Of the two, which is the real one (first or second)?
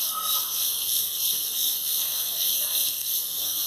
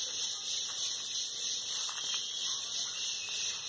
second